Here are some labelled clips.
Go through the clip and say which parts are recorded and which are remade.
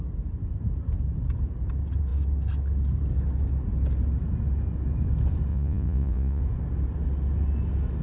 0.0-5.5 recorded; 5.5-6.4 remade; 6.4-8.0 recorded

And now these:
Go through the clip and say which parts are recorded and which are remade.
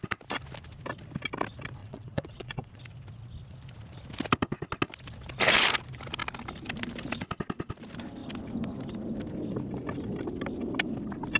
0.0-1.8 recorded; 1.8-2.8 remade; 2.8-11.4 recorded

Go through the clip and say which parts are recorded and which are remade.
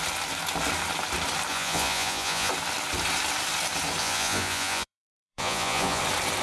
0.0-1.5 recorded; 1.5-2.5 remade; 2.5-4.0 recorded; 4.0-6.0 remade; 6.0-6.4 recorded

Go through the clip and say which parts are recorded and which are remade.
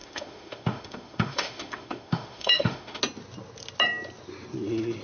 0.0-3.0 remade; 3.0-5.0 recorded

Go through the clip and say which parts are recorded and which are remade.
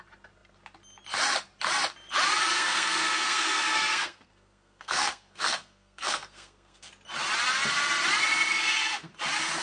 0.0-2.5 recorded; 2.5-6.9 remade; 6.9-8.5 recorded; 8.5-9.1 remade; 9.1-9.6 recorded